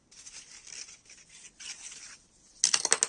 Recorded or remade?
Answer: recorded